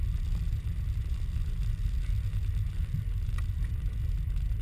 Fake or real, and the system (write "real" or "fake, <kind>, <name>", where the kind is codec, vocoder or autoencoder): real